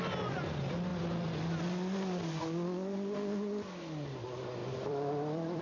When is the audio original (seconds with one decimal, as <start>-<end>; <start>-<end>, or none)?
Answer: 0.0-4.6